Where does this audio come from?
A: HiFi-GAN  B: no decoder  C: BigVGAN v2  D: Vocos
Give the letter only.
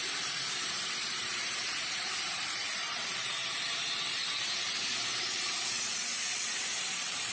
C